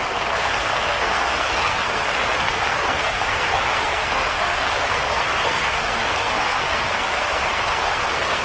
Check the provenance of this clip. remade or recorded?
remade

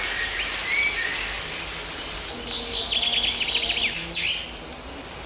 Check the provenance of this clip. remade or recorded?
recorded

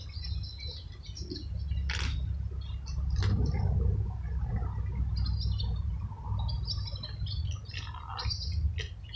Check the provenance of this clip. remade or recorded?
recorded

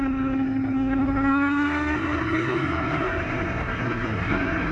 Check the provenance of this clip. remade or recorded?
remade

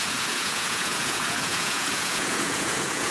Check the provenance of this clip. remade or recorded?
remade